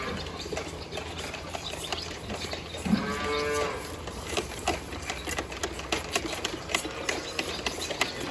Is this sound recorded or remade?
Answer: recorded